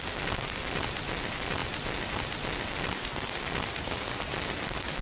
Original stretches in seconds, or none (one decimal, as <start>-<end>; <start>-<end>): 0.0-5.0